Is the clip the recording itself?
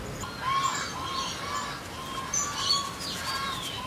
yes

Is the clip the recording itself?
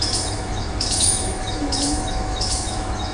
no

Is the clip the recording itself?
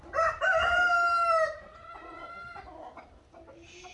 yes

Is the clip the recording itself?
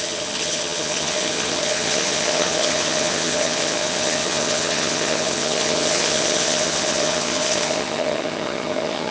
no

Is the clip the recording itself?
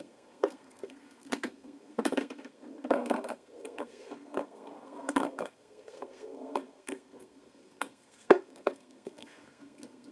no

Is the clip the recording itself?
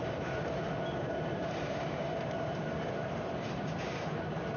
no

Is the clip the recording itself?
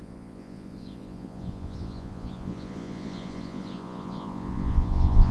no